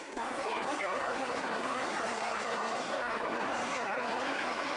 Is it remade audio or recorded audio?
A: remade